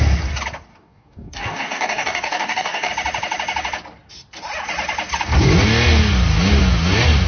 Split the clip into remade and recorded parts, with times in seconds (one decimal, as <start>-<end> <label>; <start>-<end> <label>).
0.0-0.7 recorded; 0.7-2.9 remade; 2.9-7.3 recorded